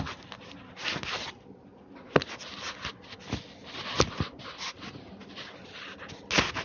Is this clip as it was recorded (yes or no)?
yes